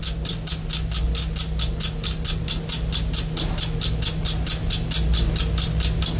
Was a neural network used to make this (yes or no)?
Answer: no